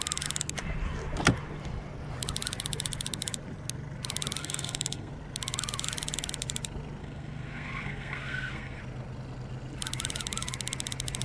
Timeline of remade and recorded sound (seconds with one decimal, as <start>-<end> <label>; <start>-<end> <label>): 0.0-4.4 recorded; 4.4-5.1 remade; 5.1-7.0 recorded; 7.0-8.8 remade; 8.8-11.2 recorded